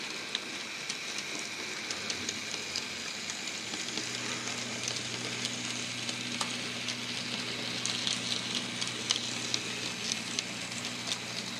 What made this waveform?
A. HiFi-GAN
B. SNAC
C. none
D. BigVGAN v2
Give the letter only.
C